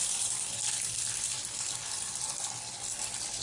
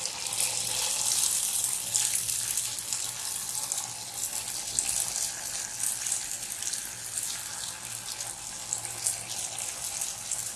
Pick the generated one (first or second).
first